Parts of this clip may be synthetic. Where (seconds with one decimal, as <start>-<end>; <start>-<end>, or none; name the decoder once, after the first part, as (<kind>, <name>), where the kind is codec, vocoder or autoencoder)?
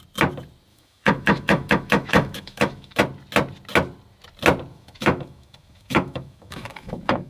0.7-3.0 (autoencoder, DAC-VAE); 4.7-7.3